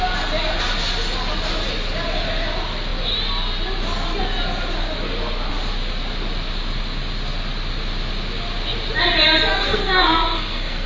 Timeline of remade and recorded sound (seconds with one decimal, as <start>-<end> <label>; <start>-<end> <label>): 0.0-9.5 recorded; 9.5-10.9 remade